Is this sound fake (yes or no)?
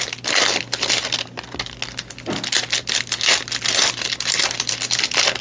no